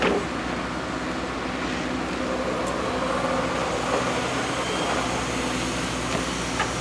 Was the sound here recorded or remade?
recorded